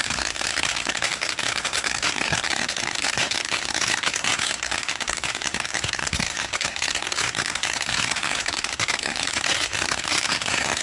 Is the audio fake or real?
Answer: fake